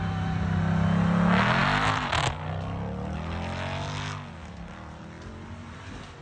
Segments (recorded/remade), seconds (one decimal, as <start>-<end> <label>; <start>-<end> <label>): 0.0-6.2 recorded